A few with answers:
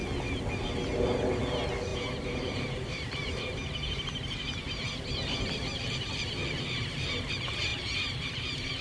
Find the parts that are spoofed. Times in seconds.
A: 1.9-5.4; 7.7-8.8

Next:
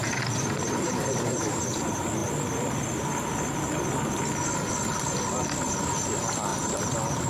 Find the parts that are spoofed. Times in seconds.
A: 0.0-1.6

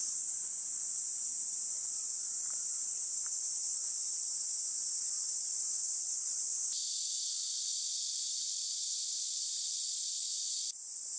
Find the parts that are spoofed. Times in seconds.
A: 0.8-6.5; 8.6-11.2

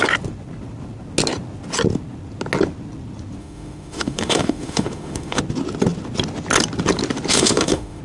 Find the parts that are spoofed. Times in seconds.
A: 3.4-5.4; 7.3-8.0

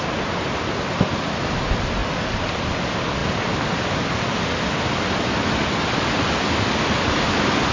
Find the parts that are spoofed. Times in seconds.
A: none

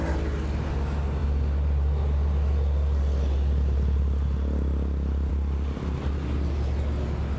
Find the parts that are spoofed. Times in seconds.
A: none